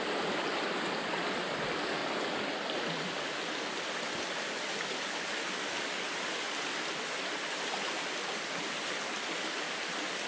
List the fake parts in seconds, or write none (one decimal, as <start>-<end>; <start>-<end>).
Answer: none